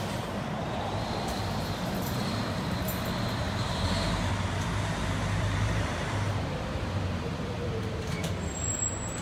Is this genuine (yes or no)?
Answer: no